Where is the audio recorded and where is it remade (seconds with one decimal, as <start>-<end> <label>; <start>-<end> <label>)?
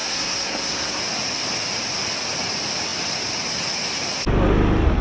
0.0-1.0 remade; 1.0-5.0 recorded